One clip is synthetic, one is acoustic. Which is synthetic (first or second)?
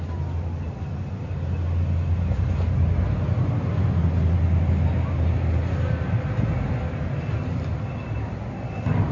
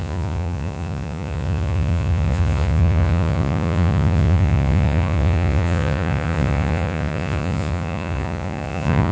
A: second